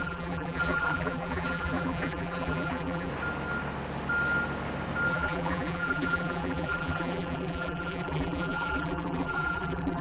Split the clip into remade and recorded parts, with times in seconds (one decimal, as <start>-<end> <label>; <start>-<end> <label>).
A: 0.0-3.1 remade; 3.1-5.1 recorded; 5.1-10.0 remade